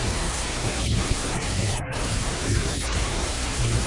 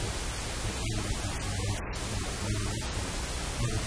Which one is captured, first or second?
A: second